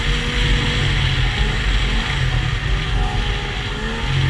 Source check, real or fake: real